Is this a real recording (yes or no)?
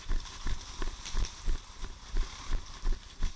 yes